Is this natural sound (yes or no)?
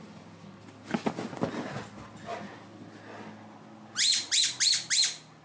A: yes